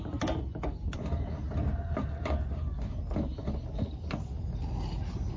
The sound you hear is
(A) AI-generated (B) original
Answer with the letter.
B